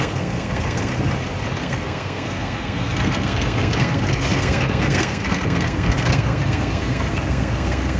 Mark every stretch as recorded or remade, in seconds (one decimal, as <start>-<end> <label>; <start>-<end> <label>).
0.0-0.9 remade; 0.9-1.6 recorded; 1.6-8.0 remade